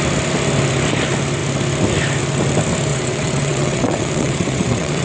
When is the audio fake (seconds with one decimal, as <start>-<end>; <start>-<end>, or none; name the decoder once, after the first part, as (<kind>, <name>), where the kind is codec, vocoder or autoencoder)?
2.9-5.0 (vocoder, WaveNeXt)